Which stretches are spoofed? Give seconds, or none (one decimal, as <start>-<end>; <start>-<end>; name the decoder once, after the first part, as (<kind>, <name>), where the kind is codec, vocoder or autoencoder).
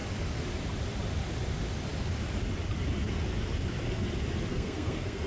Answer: 4.5-5.3 (codec, SNAC)